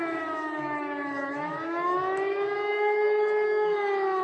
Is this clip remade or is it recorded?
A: remade